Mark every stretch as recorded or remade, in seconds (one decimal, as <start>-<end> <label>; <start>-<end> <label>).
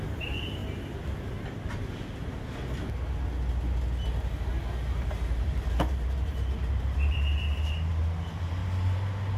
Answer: 0.0-0.6 remade; 0.6-5.1 recorded; 5.1-8.6 remade; 8.6-9.4 recorded